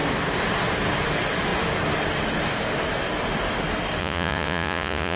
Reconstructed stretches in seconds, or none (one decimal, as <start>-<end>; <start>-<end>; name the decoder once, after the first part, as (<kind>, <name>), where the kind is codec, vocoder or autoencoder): 4.0-5.2 (vocoder, Vocos)